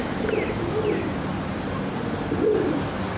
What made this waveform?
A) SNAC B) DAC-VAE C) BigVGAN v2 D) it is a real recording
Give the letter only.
D